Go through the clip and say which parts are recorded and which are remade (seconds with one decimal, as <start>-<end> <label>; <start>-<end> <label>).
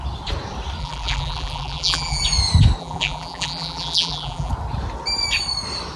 0.0-0.8 recorded; 0.8-2.2 remade; 2.2-2.8 recorded; 2.8-4.5 remade; 4.5-6.0 recorded